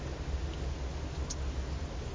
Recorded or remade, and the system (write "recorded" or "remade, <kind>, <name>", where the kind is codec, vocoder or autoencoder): recorded